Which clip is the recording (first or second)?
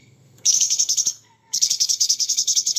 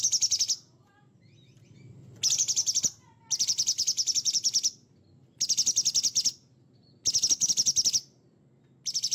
second